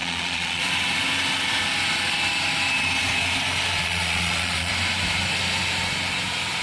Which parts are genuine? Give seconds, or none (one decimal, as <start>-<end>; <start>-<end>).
0.6-3.8; 4.7-6.6